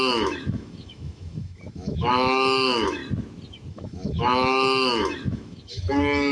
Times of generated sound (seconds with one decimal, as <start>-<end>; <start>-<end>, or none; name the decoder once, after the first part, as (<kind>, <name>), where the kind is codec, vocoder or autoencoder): 0.0-3.0 (autoencoder, DAC-VAE); 3.7-6.3